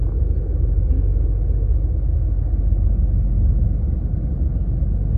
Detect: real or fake real